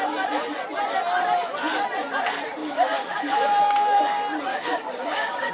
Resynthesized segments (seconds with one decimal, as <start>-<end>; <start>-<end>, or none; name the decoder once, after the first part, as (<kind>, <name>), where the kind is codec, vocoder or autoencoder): 2.6-4.0 (codec, DAC); 4.5-5.5

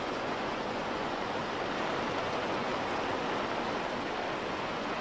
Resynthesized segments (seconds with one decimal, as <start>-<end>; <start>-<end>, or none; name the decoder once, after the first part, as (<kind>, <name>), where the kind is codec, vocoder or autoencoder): 0.0-1.4 (vocoder, Vocos); 2.2-2.7; 4.5-5.0

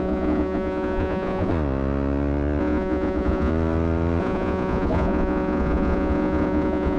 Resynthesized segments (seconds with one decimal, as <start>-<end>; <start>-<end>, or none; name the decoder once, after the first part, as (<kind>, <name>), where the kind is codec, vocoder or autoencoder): 0.0-1.5 (vocoder, Vocos); 2.6-3.5; 4.2-7.0

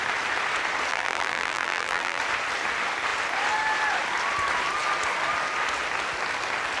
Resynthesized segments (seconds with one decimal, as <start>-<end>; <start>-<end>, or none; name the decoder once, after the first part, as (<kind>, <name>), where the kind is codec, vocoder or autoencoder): 0.9-2.2 (vocoder, BigVGAN v2)

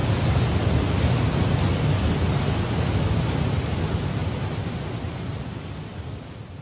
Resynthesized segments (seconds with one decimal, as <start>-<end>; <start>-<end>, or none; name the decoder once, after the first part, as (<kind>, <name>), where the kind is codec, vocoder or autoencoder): none

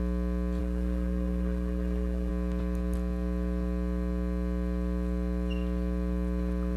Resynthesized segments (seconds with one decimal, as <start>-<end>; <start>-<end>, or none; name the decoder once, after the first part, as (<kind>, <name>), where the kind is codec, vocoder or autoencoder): 0.6-2.3 (codec, SNAC)

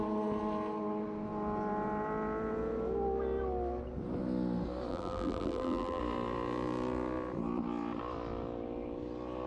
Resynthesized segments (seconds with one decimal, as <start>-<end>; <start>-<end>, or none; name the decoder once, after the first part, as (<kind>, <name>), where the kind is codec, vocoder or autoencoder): 4.9-6.0 (vocoder, BigVGAN v2)